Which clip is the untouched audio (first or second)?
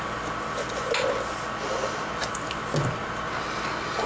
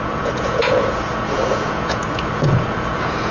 first